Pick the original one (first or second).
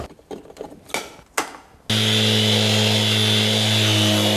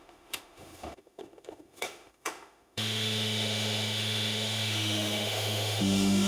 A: first